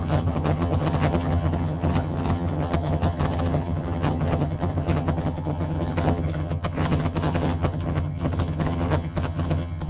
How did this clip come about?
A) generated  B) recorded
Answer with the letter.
A